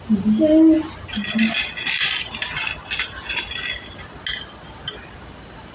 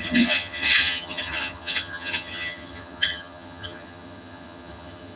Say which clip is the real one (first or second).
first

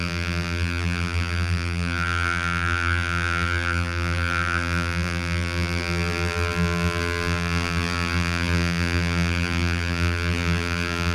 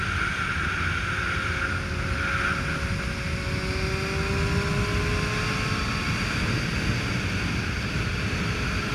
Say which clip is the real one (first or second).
second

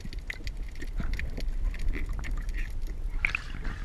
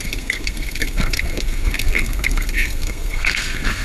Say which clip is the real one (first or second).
first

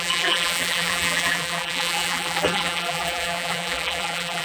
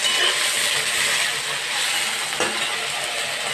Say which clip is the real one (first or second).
second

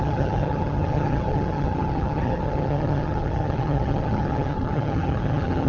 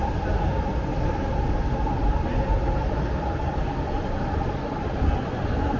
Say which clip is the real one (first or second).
second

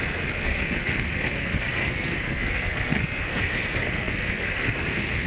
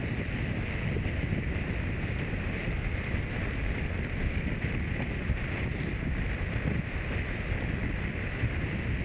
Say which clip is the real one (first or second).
second